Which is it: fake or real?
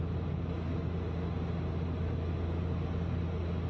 real